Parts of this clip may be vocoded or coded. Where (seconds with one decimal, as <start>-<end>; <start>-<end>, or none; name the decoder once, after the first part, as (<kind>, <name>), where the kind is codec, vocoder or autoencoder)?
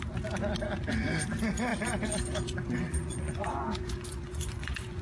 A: 1.7-5.0 (vocoder, Vocos)